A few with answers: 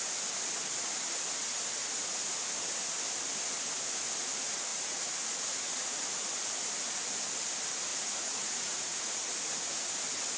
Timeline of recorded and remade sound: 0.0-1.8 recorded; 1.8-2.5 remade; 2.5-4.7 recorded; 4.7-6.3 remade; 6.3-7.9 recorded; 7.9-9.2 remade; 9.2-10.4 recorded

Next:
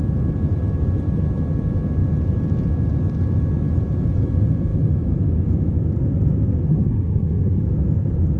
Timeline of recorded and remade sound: 0.0-6.7 recorded; 6.7-7.7 remade; 7.7-8.4 recorded